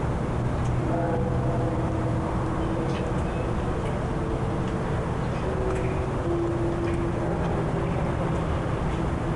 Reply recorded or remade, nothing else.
recorded